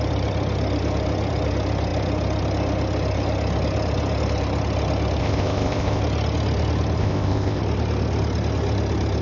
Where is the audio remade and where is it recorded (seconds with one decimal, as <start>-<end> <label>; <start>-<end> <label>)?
0.0-5.2 recorded; 5.2-6.0 remade; 6.0-7.0 recorded; 7.0-7.6 remade; 7.6-9.2 recorded